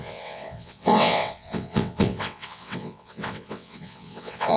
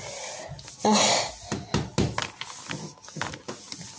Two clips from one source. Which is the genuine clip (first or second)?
second